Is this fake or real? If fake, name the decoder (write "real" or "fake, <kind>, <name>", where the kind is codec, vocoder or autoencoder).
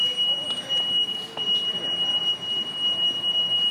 real